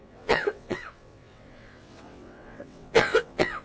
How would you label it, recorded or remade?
remade